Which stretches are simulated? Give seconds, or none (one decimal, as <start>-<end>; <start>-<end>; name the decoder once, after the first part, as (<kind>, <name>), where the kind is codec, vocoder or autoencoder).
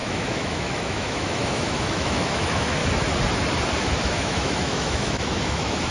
0.0-2.8 (autoencoder, DAC-VAE); 3.8-5.9